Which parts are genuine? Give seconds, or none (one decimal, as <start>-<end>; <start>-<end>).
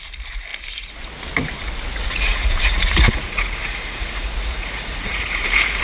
0.0-2.0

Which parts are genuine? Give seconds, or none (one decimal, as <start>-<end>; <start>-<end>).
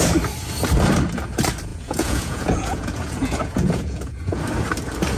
0.0-1.7; 4.4-5.2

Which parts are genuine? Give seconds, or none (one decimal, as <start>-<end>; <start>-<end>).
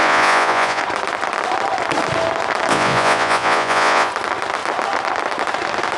0.8-2.7; 4.1-6.0